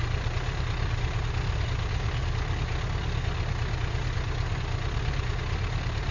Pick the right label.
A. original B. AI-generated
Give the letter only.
A